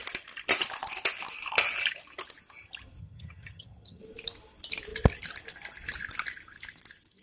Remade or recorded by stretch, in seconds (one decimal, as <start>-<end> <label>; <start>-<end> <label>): 0.0-3.0 recorded; 3.0-4.0 remade; 4.0-7.2 recorded